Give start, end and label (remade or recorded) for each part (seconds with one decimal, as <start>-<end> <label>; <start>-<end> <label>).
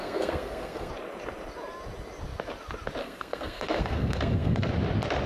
0.0-0.9 remade; 0.9-3.0 recorded; 3.0-4.7 remade; 4.7-5.3 recorded